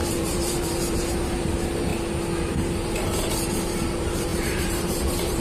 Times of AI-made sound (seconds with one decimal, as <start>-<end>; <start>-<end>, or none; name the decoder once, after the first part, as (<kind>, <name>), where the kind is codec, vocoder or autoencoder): 0.0-1.9 (vocoder, BigVGAN v2); 2.5-5.4